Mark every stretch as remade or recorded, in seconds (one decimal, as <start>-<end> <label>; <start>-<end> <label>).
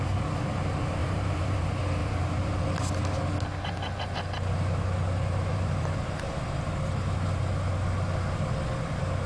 0.0-1.0 recorded; 1.0-1.6 remade; 1.6-2.0 recorded; 2.0-2.6 remade; 2.6-5.5 recorded; 5.5-6.4 remade; 6.4-9.3 recorded